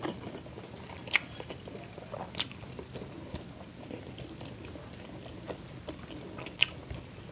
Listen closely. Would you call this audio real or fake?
real